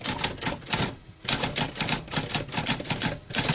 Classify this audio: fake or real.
real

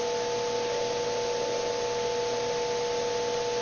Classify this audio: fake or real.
real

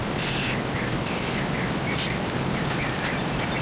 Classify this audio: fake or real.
real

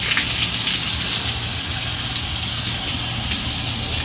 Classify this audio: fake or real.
real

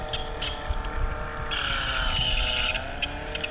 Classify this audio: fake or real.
real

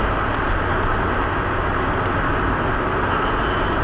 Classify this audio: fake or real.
real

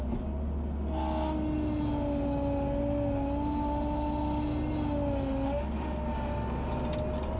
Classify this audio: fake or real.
real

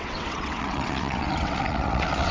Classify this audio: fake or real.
fake